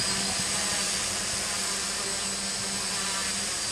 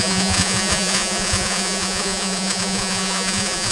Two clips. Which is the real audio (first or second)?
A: first